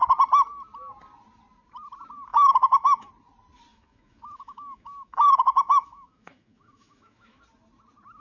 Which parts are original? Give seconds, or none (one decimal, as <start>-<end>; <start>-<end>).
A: 0.0-2.3; 3.1-3.7; 7.4-8.2

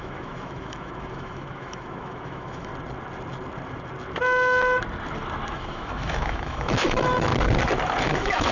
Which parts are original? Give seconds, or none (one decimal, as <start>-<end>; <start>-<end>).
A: 2.7-5.5; 7.3-8.0

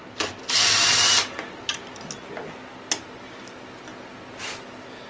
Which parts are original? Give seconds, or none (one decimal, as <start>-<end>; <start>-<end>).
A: 0.0-5.1